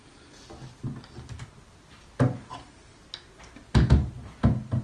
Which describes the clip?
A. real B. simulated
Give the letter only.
A